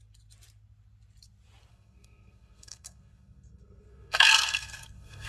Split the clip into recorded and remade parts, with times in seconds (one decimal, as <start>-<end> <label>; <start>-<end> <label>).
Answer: 0.0-1.7 recorded; 1.7-5.3 remade